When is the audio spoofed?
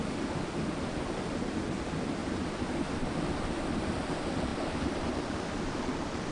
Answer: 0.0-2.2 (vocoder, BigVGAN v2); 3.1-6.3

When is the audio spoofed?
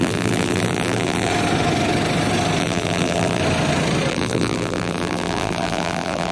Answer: 0.0-1.3 (vocoder, BigVGAN v2); 2.6-3.4; 4.1-6.3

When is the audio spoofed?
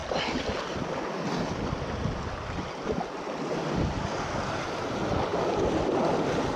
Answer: none